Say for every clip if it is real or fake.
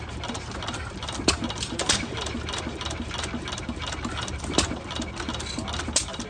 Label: real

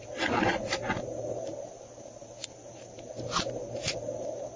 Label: real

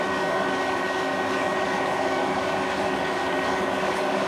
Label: fake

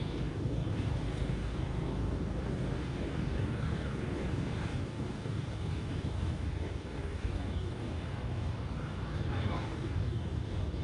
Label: fake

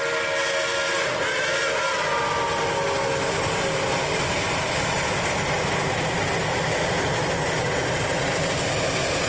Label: real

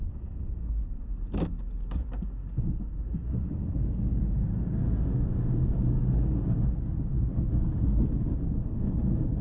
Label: fake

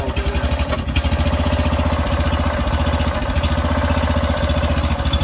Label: real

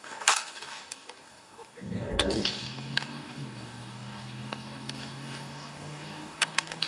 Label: fake